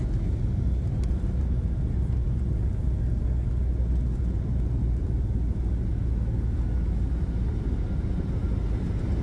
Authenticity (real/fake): real